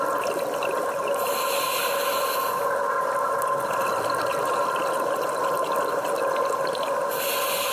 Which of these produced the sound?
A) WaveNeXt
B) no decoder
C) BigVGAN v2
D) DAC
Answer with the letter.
B